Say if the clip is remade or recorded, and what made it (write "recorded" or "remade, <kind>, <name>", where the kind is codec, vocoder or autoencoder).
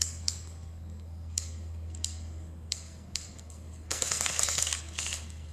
remade, codec, SNAC